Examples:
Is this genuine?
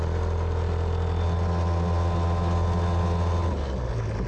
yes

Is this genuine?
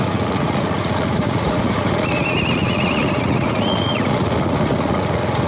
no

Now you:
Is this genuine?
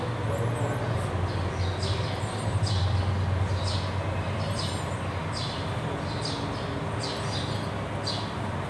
yes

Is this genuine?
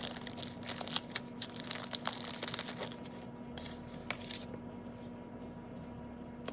yes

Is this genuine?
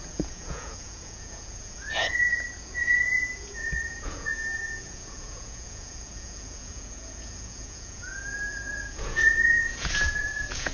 no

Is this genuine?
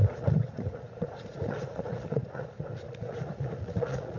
no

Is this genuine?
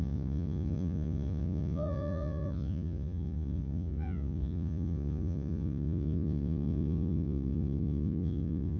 no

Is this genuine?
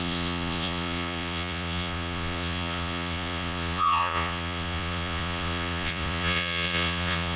no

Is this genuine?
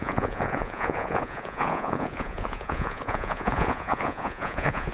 no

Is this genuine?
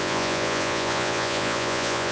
no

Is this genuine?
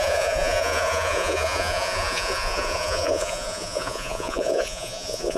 no